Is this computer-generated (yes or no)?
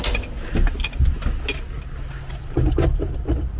no